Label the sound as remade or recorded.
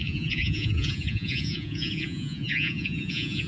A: remade